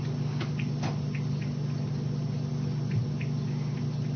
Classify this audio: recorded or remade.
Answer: recorded